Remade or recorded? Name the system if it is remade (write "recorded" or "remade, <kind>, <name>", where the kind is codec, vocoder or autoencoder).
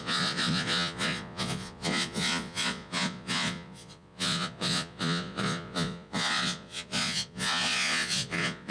remade, vocoder, Vocos